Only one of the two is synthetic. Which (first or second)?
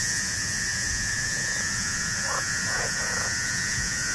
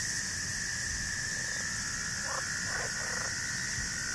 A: first